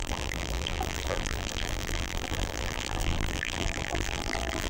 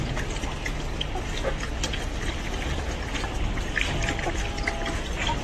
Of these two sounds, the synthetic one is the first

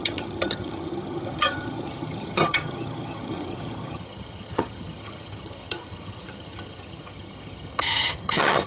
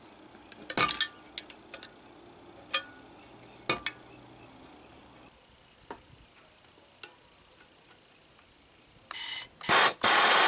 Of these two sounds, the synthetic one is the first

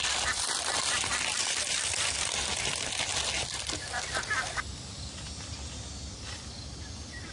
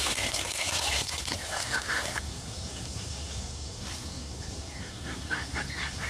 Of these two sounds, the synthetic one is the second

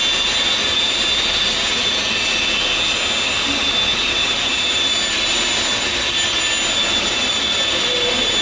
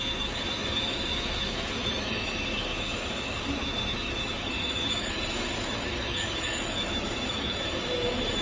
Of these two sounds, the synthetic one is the second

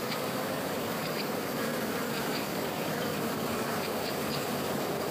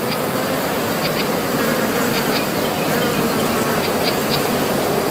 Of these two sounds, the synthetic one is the first